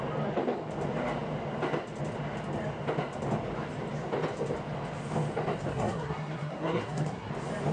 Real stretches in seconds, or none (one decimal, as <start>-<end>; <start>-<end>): 0.0-5.7; 7.3-7.7